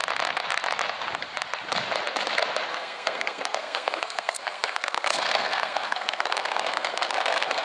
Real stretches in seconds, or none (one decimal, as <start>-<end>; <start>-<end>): 0.0-2.7